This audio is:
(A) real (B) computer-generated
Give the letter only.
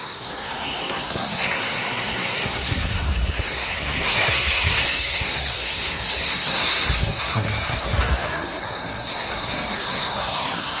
B